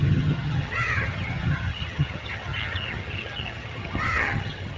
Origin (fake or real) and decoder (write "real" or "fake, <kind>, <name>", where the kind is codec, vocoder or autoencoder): fake, vocoder, HiFi-GAN